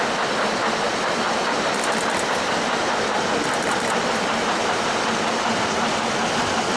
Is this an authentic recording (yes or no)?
yes